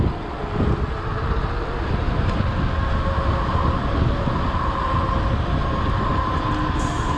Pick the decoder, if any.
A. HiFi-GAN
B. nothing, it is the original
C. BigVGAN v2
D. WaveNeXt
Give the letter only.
B